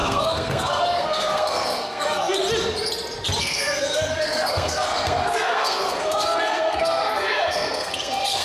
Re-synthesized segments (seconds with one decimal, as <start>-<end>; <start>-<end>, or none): 0.0-2.4; 3.4-8.4